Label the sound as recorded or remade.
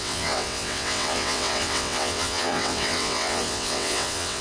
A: remade